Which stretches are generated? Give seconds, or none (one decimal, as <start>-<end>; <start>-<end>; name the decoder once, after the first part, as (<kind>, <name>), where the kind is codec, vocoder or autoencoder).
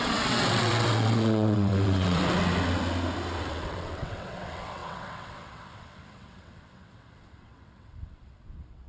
0.0-2.2 (vocoder, WaveNeXt); 3.4-8.9